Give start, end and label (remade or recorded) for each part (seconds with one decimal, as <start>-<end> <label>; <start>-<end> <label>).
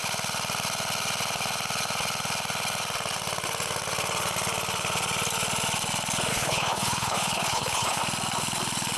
0.0-6.3 recorded; 6.3-8.0 remade; 8.0-9.0 recorded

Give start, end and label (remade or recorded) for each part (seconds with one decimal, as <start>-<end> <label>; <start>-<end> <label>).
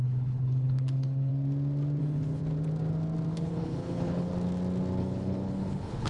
0.0-1.3 remade; 1.3-2.0 recorded; 2.0-2.4 remade; 2.4-3.3 recorded; 3.3-4.3 remade; 4.3-5.0 recorded; 5.0-6.1 remade